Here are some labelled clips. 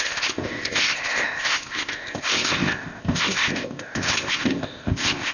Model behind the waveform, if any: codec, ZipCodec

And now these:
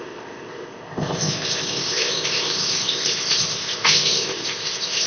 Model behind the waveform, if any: codec, ZipCodec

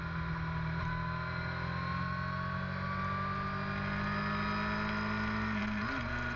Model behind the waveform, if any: none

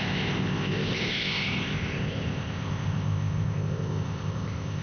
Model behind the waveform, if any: codec, ZipCodec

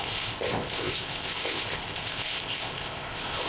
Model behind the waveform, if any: codec, ZipCodec